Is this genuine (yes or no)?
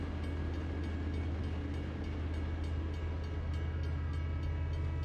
yes